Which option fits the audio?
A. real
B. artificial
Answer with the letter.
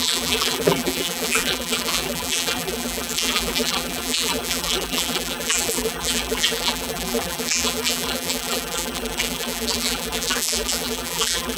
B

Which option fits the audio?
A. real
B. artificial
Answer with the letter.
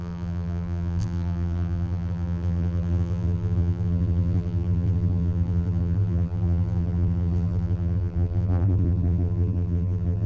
B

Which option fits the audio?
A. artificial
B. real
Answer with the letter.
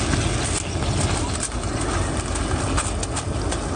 B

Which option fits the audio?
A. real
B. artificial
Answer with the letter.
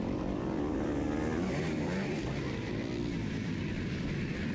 B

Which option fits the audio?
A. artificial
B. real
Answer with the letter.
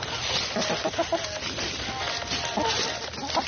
A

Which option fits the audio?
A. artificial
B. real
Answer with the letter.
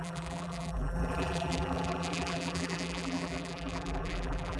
A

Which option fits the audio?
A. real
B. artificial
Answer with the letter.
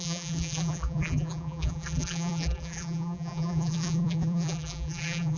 B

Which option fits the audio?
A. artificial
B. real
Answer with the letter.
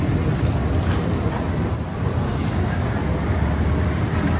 B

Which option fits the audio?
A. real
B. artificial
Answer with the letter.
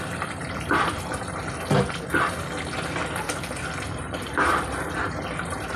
B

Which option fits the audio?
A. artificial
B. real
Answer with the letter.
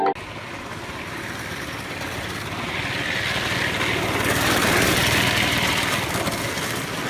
B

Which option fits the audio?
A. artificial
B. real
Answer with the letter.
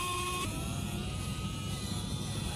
A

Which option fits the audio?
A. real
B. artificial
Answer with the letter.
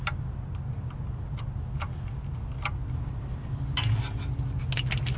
A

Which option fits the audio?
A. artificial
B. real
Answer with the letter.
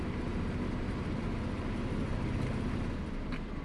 B